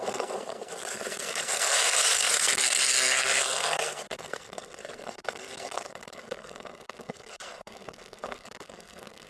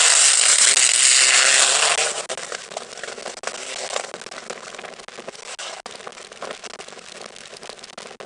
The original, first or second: second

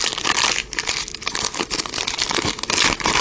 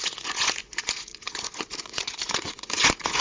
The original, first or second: first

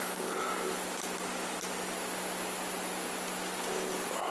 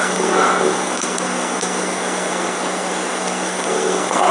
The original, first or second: first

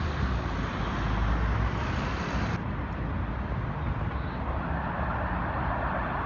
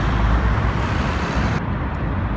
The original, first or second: first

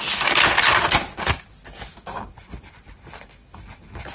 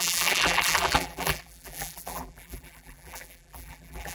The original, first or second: first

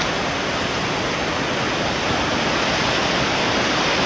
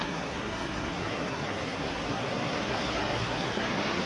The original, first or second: first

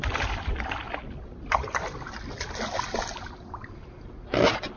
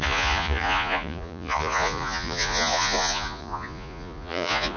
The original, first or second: first